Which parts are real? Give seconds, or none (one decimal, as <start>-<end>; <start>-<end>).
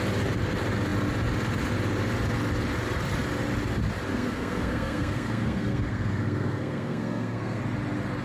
0.0-4.1; 7.6-8.2